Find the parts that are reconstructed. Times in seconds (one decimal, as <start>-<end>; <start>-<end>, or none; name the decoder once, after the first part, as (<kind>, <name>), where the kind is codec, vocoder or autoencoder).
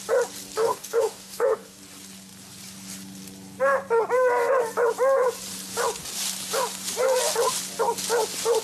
0.6-1.8 (codec, DAC)